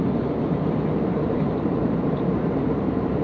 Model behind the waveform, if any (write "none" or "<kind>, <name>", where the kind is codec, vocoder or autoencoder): vocoder, BigVGAN v2